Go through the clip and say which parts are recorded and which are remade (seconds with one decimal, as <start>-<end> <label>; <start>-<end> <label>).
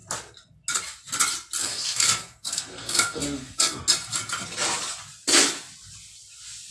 0.0-1.6 recorded; 1.6-3.8 remade; 3.8-6.7 recorded